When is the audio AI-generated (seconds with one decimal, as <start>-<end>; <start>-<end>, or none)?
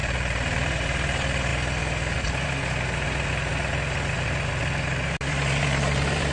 0.0-1.5; 5.3-6.3